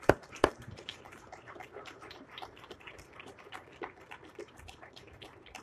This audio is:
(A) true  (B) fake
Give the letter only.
B